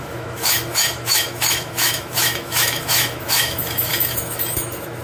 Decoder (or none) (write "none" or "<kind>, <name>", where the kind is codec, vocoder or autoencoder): autoencoder, DAC-VAE